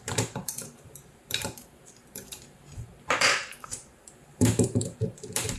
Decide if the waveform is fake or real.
fake